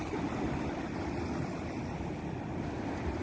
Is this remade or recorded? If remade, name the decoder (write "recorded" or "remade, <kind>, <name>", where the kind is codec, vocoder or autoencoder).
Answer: recorded